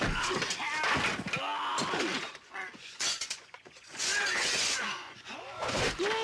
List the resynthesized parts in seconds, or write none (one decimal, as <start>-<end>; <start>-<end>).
2.1-5.8